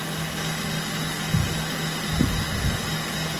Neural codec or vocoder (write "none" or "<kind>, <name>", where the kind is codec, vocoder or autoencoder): none